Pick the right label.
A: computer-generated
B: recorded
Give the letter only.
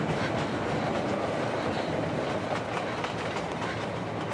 B